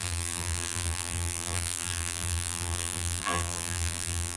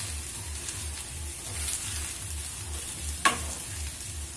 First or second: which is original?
second